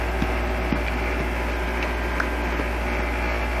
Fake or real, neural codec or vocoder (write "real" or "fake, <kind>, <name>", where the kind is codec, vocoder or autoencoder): real